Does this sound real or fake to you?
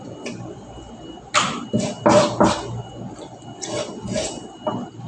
real